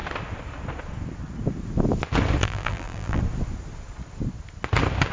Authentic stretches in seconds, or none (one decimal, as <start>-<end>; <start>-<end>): 0.0-2.4; 3.2-5.1